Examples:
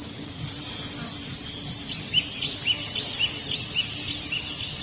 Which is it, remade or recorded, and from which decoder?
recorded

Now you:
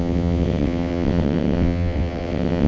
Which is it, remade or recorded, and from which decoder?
remade, vocoder, WaveNeXt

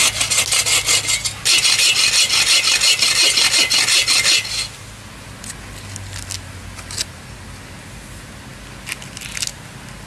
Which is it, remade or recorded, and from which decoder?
recorded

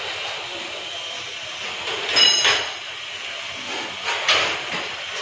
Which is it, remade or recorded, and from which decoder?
recorded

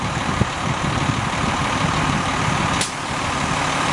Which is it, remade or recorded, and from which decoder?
remade, vocoder, BigVGAN v2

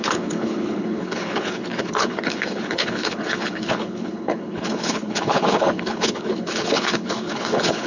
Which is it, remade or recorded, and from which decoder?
remade, codec, HILCodec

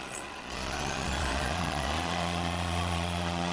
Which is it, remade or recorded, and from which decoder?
remade, vocoder, Vocos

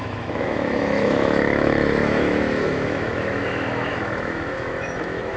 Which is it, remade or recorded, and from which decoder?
remade, autoencoder, DAC-VAE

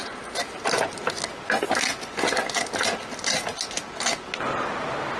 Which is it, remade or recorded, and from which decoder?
recorded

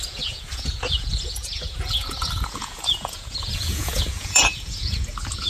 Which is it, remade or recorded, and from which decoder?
remade, vocoder, Vocos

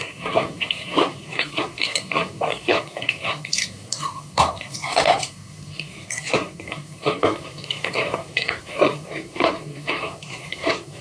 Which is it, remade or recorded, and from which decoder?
remade, codec, SNAC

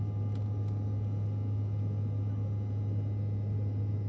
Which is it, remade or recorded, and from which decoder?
recorded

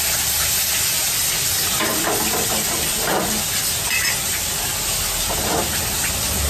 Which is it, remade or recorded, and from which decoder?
recorded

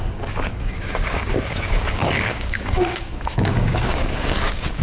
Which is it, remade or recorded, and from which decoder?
remade, codec, DAC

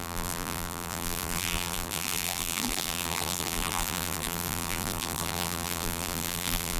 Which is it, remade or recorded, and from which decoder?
remade, vocoder, BigVGAN v2